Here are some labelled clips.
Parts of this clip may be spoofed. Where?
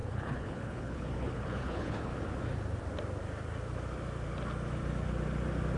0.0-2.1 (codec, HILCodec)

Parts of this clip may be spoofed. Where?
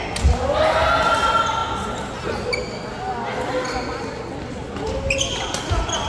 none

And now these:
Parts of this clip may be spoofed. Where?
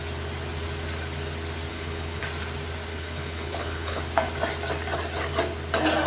1.7-2.2 (codec, HILCodec); 2.9-4.0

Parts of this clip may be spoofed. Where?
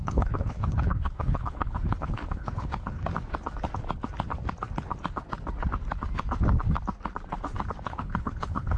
0.0-3.1 (codec, HILCodec); 7.8-8.8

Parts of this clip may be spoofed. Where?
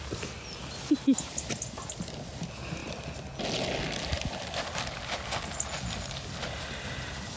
none